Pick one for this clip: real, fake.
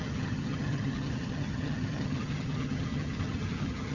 fake